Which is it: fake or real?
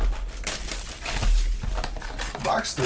real